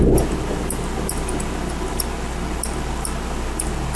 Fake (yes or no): no